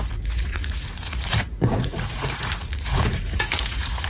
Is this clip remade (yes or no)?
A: yes